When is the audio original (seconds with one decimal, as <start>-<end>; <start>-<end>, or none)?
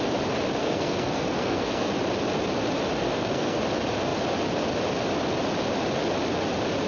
0.0-0.6; 1.9-3.0; 3.6-6.9